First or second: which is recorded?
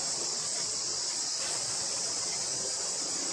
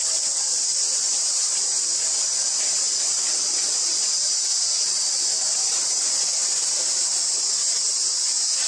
second